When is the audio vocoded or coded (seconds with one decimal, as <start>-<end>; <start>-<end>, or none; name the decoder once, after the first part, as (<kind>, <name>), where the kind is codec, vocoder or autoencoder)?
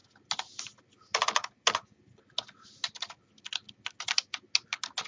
none